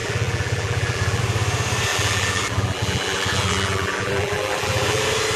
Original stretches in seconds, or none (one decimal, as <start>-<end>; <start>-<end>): 1.2-1.9; 5.0-5.4